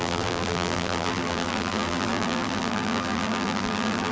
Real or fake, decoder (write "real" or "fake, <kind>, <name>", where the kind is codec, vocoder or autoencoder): fake, vocoder, BigVGAN v2